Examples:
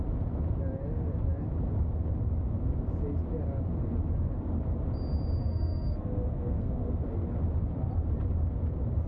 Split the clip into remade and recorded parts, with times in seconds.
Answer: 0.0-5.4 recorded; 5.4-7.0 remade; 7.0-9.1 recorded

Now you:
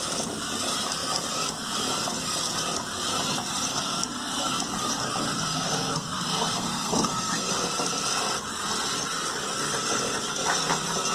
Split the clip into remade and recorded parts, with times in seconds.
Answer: 0.0-3.7 recorded; 3.7-4.5 remade; 4.5-5.5 recorded; 5.5-7.5 remade; 7.5-11.1 recorded

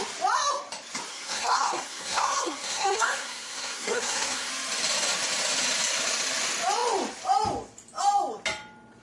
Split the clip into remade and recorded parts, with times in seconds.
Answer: 0.0-1.1 recorded; 1.1-4.5 remade; 4.5-9.0 recorded

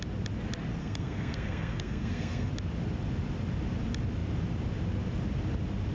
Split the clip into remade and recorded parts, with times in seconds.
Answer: 0.0-0.8 recorded; 0.8-2.5 remade; 2.5-5.9 recorded

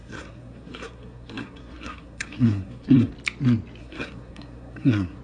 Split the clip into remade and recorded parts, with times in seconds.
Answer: 0.0-3.1 remade; 3.1-3.8 recorded; 3.8-5.2 remade

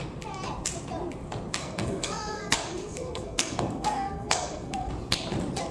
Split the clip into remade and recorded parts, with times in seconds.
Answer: 0.0-1.6 recorded; 1.6-4.9 remade; 4.9-5.7 recorded

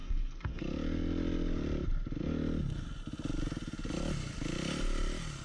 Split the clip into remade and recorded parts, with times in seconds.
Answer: 0.0-0.6 remade; 0.6-5.4 recorded

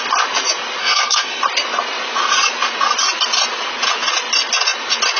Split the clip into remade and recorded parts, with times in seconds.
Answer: 0.0-0.8 recorded; 0.8-1.4 remade; 1.4-5.2 recorded